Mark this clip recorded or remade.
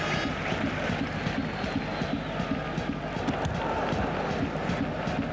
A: recorded